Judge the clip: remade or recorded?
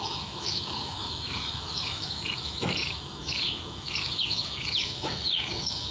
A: remade